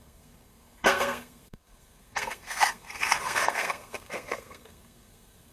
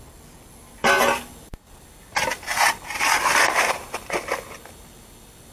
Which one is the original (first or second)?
second